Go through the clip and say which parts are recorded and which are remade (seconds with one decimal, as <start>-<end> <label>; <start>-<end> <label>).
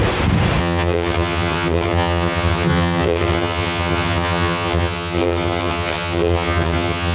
0.0-0.6 recorded; 0.6-7.1 remade